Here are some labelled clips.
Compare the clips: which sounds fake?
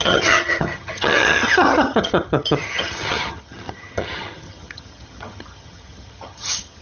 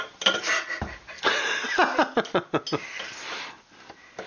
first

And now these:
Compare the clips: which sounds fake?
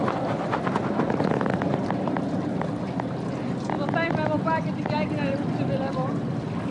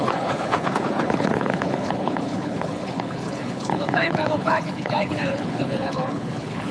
second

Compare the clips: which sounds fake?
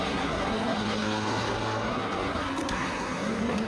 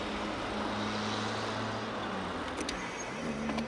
first